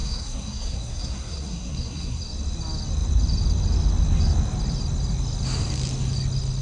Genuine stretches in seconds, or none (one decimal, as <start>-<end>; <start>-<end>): 2.2-6.6